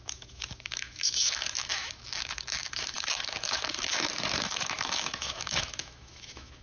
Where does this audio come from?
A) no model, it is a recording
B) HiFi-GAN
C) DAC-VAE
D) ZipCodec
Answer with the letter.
C